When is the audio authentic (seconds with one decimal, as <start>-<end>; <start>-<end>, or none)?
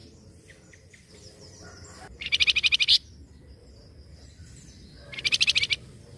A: 0.0-6.2